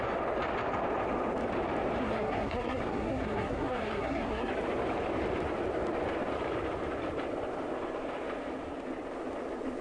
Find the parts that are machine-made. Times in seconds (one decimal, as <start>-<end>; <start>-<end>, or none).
2.0-4.5